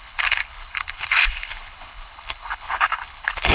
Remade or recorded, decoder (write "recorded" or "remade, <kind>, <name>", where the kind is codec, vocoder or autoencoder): remade, codec, HILCodec